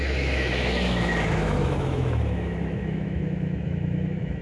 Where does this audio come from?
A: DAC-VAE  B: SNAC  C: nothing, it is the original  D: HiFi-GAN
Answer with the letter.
A